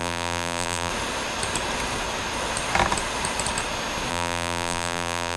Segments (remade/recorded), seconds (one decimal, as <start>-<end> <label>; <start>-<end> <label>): 0.0-0.9 remade; 0.9-4.1 recorded; 4.1-5.4 remade